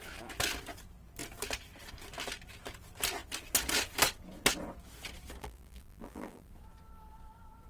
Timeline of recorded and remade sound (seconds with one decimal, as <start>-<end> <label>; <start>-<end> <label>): 0.0-5.4 recorded; 5.4-6.5 remade; 6.5-7.7 recorded